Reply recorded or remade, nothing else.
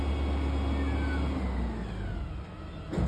recorded